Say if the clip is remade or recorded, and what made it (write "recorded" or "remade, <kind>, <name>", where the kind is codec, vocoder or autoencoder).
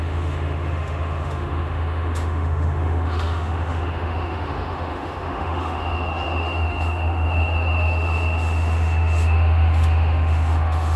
remade, autoencoder, DAC-VAE